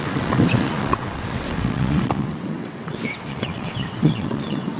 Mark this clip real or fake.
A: fake